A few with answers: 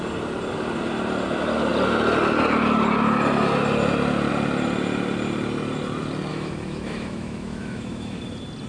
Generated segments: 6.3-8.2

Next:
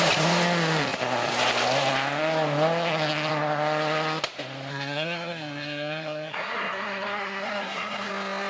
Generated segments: 4.7-8.1

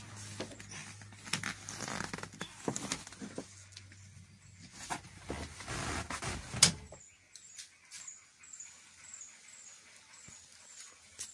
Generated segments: none

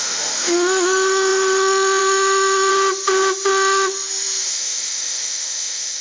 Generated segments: 0.0-2.7; 3.5-6.0